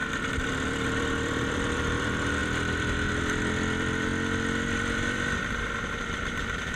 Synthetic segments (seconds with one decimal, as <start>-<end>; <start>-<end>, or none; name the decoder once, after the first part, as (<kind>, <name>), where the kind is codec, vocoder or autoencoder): 0.0-4.1 (vocoder, BigVGAN v2); 4.8-6.8